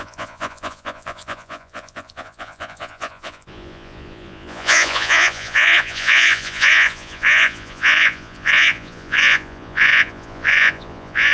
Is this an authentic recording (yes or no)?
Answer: no